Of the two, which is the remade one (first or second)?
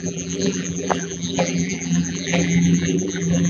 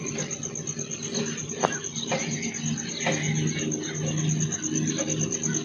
first